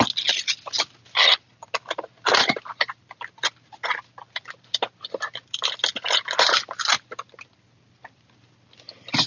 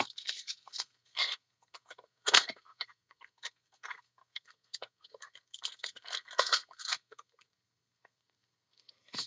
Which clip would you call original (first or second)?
first